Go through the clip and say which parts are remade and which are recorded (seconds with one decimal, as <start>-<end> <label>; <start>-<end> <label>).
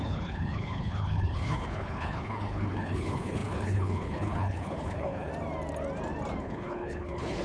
0.0-5.3 remade; 5.3-6.4 recorded; 6.4-7.4 remade